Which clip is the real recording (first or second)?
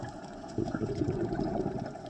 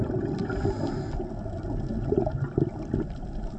second